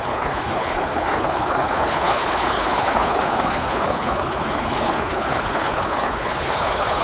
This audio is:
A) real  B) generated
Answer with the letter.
B